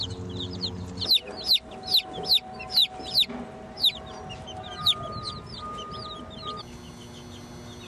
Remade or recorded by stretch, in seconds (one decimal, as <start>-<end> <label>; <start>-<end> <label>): 0.0-7.9 recorded